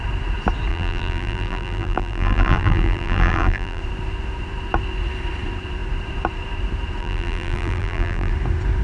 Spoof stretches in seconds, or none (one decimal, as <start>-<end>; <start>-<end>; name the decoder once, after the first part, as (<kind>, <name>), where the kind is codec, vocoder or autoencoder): 0.7-3.8 (vocoder, BigVGAN v2); 7.0-8.3